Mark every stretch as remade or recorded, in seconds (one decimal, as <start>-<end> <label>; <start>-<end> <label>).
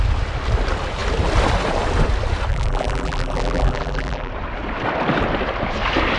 0.0-2.5 recorded; 2.5-4.3 remade; 4.3-6.2 recorded